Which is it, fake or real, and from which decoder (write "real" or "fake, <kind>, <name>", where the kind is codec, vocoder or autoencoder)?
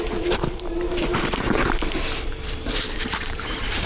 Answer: fake, vocoder, BigVGAN v2